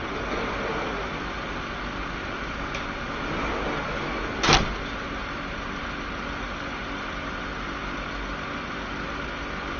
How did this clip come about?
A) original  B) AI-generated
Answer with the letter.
A